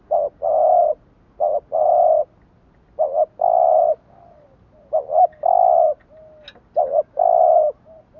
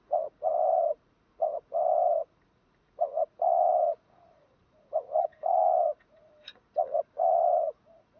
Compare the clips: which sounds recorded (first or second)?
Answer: first